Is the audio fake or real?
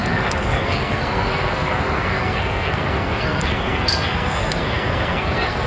fake